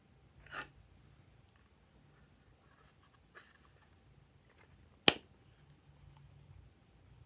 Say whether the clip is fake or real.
real